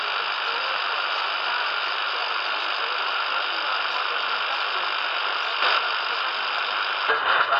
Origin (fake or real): real